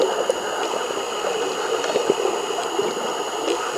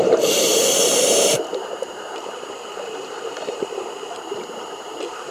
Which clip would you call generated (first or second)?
second